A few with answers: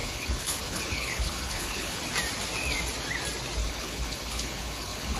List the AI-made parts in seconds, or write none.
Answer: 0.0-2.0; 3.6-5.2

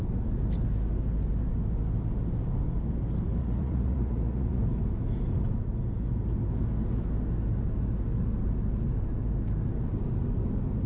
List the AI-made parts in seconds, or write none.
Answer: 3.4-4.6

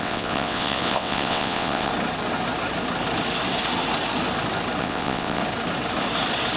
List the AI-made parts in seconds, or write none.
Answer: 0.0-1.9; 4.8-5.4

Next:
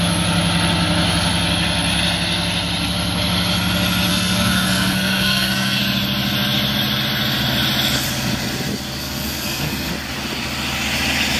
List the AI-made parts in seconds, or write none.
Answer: 4.1-5.8; 9.0-9.9

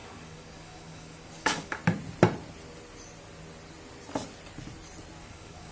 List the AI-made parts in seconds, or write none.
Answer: 0.0-1.8; 5.2-5.7

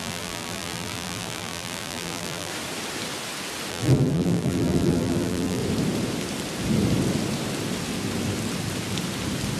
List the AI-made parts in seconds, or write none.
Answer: 0.0-2.5; 3.7-5.6